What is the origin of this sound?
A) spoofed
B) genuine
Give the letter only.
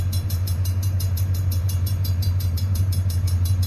A